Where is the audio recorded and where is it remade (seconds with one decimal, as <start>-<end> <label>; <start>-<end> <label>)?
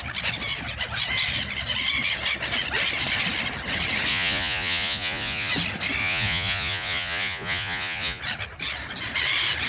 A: 0.0-4.1 recorded; 4.1-5.5 remade; 5.5-6.0 recorded; 6.0-8.2 remade; 8.2-9.7 recorded